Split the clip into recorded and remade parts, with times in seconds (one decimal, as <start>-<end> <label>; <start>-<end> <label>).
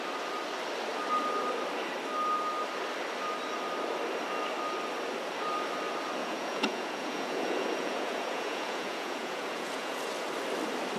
0.0-6.2 recorded; 6.2-10.0 remade; 10.0-11.0 recorded